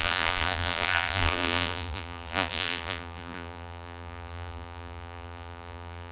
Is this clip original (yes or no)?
no